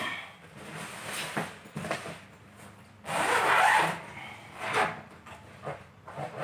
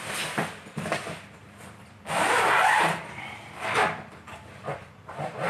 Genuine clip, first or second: first